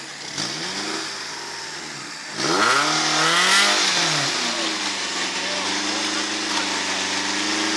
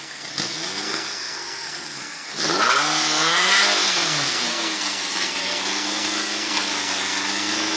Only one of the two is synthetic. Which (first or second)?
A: second